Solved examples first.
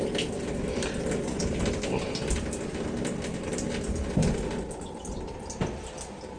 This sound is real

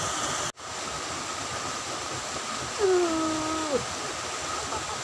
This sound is real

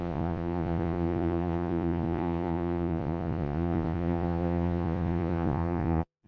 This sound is fake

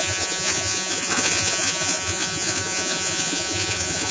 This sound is fake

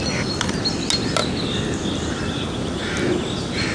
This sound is real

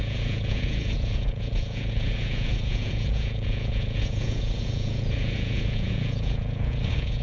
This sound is fake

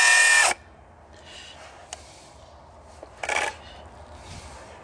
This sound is real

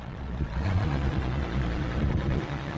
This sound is fake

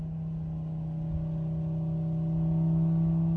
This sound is real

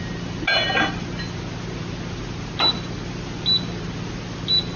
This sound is real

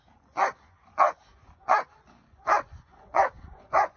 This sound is fake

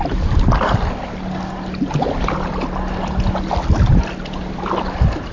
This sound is real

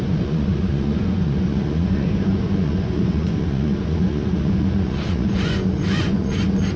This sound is fake